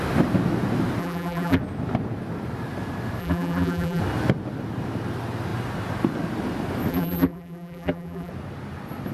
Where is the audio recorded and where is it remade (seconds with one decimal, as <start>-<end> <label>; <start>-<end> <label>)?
0.0-1.0 recorded; 1.0-1.6 remade; 1.6-3.2 recorded; 3.2-4.0 remade; 4.0-6.9 recorded; 6.9-8.3 remade; 8.3-9.1 recorded